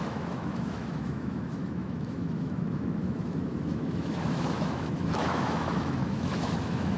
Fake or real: fake